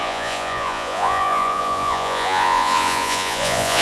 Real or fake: fake